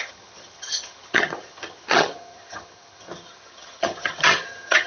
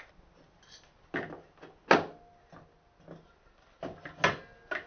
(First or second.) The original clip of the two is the second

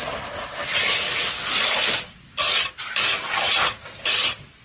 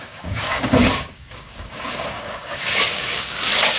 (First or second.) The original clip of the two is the first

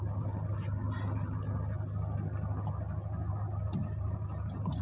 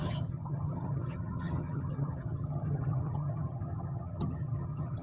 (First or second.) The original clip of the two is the first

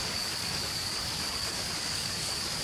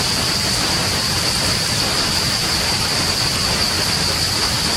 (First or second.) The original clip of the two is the second